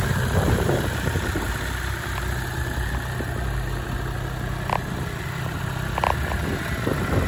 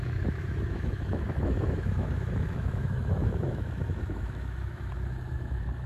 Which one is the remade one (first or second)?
second